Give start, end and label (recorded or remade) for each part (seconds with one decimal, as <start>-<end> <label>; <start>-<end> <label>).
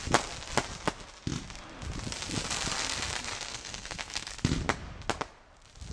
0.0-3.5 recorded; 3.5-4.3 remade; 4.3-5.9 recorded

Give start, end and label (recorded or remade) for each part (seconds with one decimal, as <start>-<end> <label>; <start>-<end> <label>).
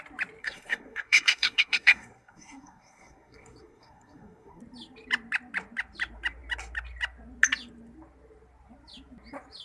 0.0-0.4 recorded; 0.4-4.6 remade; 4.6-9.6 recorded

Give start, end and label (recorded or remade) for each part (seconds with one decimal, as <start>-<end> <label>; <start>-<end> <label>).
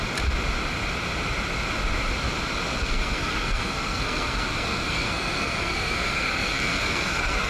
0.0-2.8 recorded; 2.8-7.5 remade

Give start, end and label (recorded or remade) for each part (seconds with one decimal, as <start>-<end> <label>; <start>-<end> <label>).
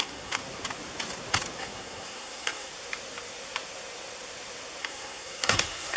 0.0-0.4 remade; 0.4-1.6 recorded; 1.6-2.7 remade; 2.7-4.8 recorded; 4.8-6.0 remade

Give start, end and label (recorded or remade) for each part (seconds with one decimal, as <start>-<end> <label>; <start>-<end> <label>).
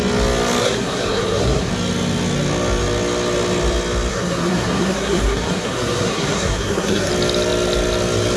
0.0-0.6 recorded; 0.6-1.7 remade; 1.7-4.1 recorded; 4.1-7.1 remade; 7.1-8.4 recorded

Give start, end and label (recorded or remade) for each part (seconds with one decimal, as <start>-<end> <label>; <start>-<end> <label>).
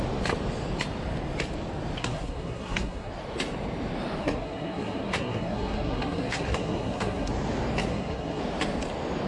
0.0-2.0 recorded; 2.0-3.1 remade; 3.1-4.2 recorded; 4.2-7.3 remade; 7.3-7.9 recorded; 7.9-8.4 remade; 8.4-9.3 recorded